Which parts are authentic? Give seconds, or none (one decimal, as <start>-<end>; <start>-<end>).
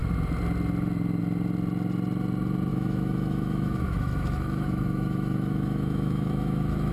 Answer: 0.0-2.7